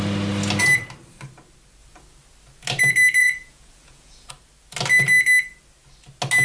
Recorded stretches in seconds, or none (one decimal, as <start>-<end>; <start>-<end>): 0.0-3.2; 4.3-6.4